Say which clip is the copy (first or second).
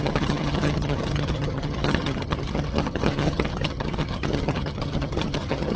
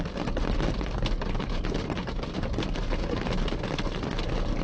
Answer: first